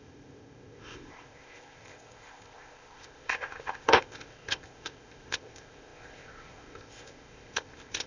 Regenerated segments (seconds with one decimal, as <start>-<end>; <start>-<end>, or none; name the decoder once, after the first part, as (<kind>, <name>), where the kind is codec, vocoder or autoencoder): 0.0-8.1 (codec, ZipCodec)